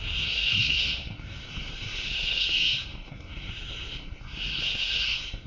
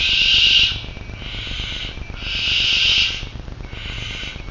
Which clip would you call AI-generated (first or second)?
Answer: first